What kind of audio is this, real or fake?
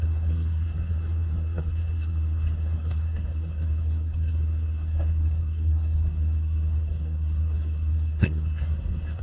fake